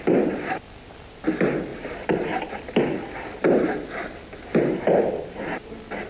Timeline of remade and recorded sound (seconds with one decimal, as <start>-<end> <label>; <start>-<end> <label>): 0.0-6.1 recorded

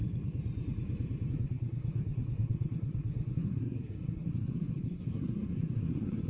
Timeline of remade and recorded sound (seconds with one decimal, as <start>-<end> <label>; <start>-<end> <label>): 0.0-1.3 recorded; 1.3-6.3 remade

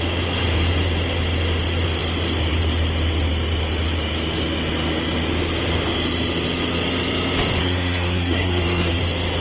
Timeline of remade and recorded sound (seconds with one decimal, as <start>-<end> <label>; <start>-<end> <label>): 0.0-7.6 recorded; 7.6-9.0 remade; 9.0-9.4 recorded

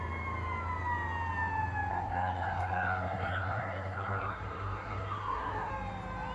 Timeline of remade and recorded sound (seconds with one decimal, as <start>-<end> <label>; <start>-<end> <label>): 0.0-1.9 recorded; 1.9-5.7 remade; 5.7-6.3 recorded

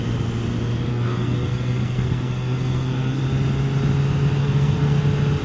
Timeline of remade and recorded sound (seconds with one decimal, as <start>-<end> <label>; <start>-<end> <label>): 0.0-0.9 recorded; 0.9-3.2 remade; 3.2-4.4 recorded; 4.4-5.0 remade; 5.0-5.4 recorded

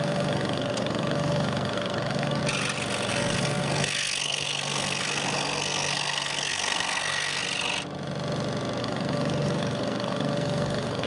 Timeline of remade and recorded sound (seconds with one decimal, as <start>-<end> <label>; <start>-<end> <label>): 0.0-2.4 remade; 2.4-3.1 recorded; 3.1-7.4 remade; 7.4-8.8 recorded; 8.8-11.1 remade

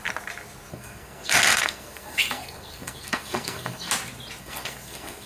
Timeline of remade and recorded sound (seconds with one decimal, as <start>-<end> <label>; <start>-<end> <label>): 0.0-0.7 recorded; 0.7-3.9 remade; 3.9-4.4 recorded; 4.4-5.3 remade

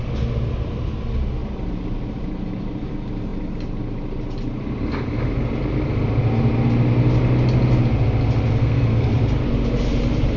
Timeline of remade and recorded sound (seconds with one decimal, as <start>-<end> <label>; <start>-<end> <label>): 0.0-8.5 recorded; 8.5-9.1 remade; 9.1-10.4 recorded